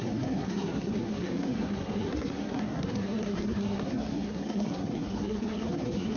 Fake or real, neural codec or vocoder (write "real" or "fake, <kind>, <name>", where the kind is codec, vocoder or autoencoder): fake, codec, SNAC